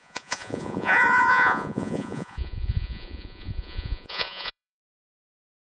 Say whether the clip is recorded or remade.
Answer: remade